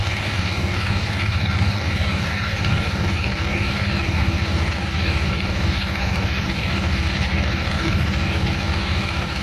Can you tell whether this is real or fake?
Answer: fake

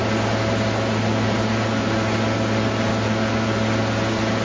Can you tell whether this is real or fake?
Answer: real